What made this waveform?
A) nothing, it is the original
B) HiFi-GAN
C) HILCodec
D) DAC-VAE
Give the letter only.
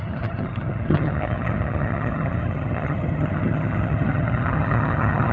B